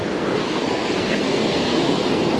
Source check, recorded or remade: remade